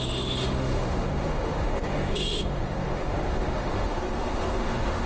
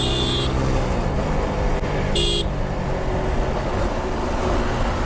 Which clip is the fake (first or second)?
first